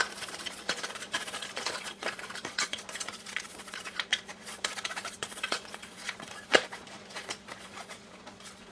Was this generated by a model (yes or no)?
yes